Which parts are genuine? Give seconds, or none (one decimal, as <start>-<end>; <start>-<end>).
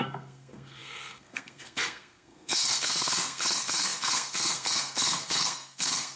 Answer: none